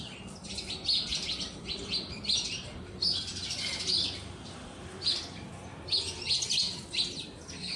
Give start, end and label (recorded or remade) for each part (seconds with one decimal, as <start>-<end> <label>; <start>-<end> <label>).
0.0-1.1 recorded; 1.1-5.5 remade; 5.5-7.8 recorded